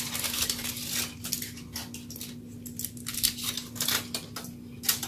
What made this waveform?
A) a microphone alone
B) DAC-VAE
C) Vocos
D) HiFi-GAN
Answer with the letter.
A